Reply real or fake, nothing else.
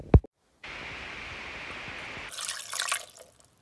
real